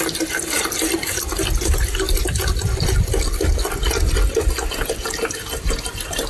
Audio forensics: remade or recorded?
recorded